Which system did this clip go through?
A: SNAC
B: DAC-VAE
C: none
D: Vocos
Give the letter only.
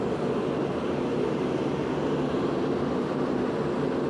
C